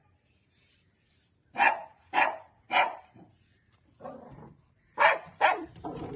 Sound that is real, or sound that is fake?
fake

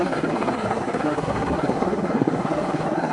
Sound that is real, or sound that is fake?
fake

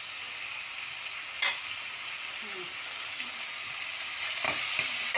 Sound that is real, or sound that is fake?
real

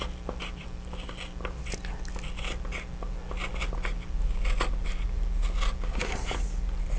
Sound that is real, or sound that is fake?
real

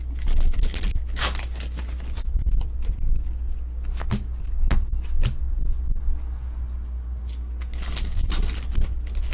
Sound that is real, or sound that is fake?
real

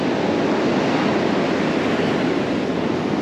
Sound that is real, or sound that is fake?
real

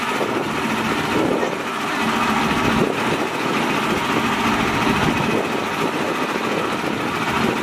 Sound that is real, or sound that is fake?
real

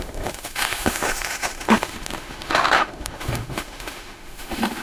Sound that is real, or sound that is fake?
fake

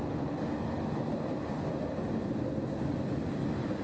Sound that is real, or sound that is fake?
real